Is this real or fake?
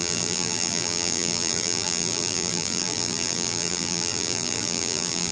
fake